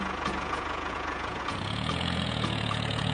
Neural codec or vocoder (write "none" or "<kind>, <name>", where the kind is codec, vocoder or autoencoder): vocoder, Vocos